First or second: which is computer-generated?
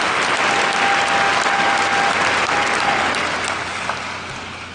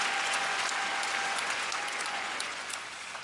second